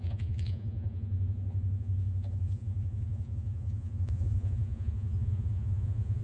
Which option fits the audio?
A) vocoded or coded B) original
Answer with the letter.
A